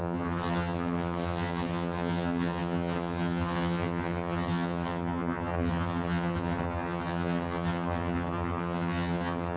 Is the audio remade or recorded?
remade